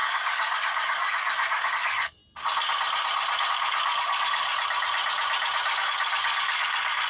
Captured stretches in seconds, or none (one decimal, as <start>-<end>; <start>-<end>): 2.2-3.5; 4.5-5.8